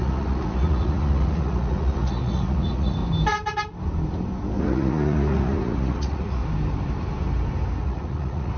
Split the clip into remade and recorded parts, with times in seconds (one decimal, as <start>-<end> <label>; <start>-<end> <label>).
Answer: 0.0-3.0 remade; 3.0-4.6 recorded; 4.6-6.4 remade; 6.4-7.8 recorded; 7.8-8.6 remade